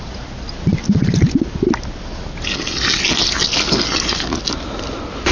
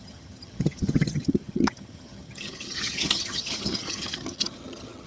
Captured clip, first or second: first